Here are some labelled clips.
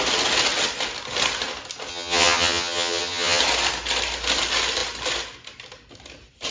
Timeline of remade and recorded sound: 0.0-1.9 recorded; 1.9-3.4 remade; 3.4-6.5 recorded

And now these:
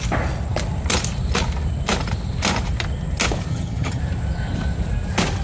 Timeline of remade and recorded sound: 0.0-3.5 recorded; 3.5-4.0 remade; 4.0-5.4 recorded

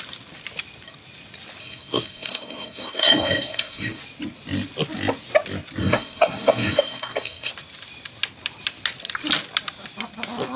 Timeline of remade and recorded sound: 0.0-1.6 recorded; 1.6-4.0 remade; 4.0-5.8 recorded; 5.8-7.5 remade; 7.5-10.6 recorded